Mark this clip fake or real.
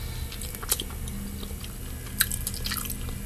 real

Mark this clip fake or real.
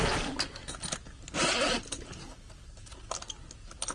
real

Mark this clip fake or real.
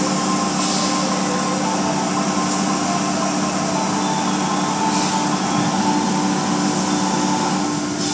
real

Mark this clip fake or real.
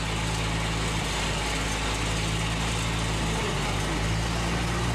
real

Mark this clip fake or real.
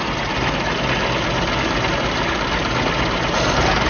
real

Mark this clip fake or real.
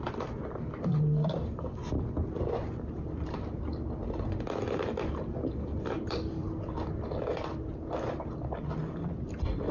fake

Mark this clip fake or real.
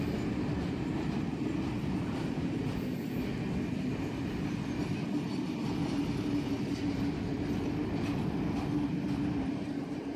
real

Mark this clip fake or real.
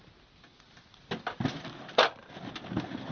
real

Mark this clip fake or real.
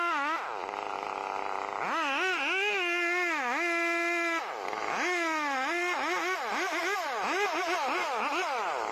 real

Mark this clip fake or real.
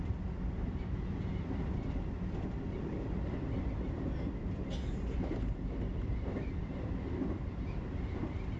fake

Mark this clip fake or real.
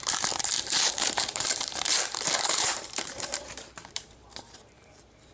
fake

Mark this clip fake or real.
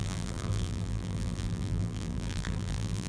fake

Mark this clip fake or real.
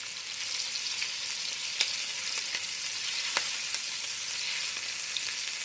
real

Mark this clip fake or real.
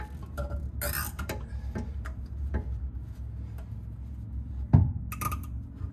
real